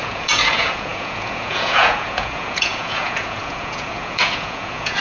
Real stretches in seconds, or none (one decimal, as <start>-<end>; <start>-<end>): none